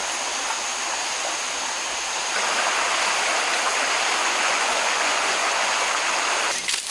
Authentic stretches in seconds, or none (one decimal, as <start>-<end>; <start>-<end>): 0.0-4.2; 5.9-6.9